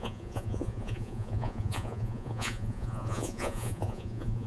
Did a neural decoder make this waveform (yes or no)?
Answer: yes